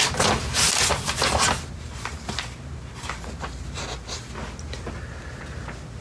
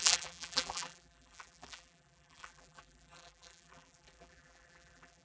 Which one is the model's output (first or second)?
second